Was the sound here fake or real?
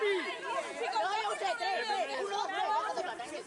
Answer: real